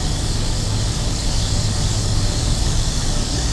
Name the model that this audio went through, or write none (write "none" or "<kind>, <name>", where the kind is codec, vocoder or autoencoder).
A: codec, DAC